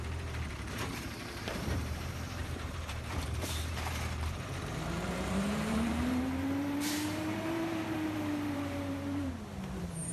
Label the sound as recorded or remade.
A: remade